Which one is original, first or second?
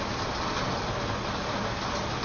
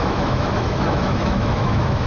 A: first